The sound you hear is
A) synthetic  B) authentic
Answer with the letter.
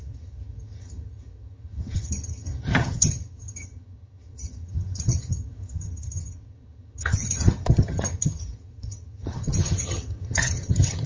A